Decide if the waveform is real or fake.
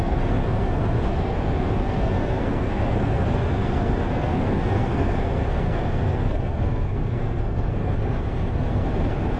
fake